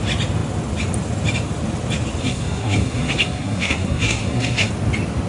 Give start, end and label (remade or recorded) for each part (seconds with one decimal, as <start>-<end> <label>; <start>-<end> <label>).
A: 0.0-2.2 recorded; 2.2-4.7 remade; 4.7-5.3 recorded